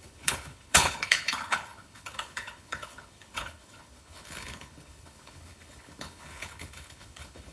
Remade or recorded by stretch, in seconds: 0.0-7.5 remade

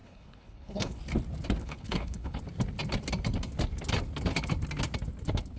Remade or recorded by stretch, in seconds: 0.0-1.0 remade; 1.0-1.6 recorded; 1.6-2.4 remade; 2.4-5.6 recorded